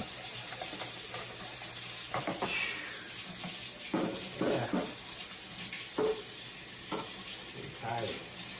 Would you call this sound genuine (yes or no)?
no